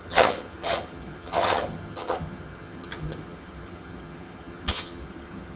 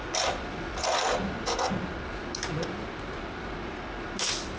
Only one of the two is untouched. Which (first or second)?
second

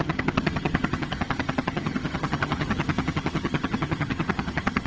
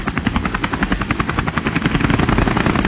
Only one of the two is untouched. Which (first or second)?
second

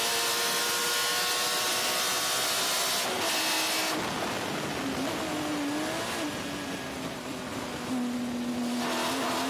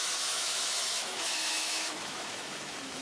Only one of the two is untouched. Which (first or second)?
first